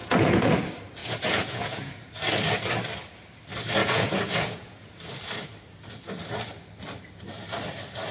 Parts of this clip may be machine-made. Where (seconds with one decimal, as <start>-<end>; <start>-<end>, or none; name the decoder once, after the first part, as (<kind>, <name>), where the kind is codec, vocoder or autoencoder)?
0.0-0.6 (vocoder, Vocos); 1.0-2.1; 3.8-4.9